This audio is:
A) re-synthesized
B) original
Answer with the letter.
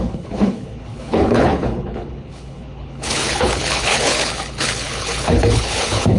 A